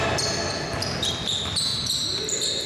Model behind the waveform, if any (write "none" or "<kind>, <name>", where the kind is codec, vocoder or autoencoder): none